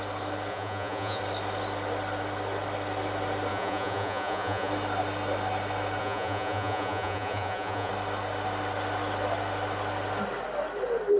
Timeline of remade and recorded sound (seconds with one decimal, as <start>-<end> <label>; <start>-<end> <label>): 0.0-0.5 recorded; 0.5-1.2 remade; 1.2-3.5 recorded; 3.5-4.7 remade; 4.7-6.0 recorded; 6.0-7.9 remade; 7.9-11.2 recorded